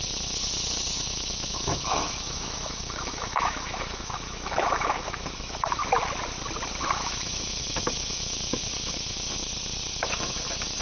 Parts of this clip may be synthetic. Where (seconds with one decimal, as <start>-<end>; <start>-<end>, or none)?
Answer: 0.0-5.8; 6.8-9.4; 10.0-10.8